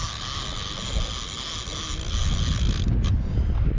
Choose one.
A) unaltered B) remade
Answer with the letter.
A